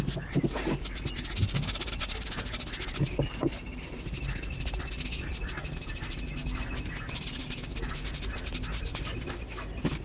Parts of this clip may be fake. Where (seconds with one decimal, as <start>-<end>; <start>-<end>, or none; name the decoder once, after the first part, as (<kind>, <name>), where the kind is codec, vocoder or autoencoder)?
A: none